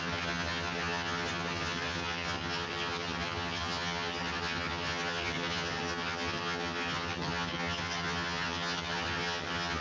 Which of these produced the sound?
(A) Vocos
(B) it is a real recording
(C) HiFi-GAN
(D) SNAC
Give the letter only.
C